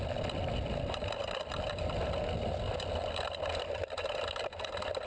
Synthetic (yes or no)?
no